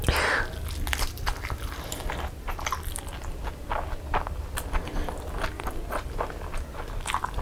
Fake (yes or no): no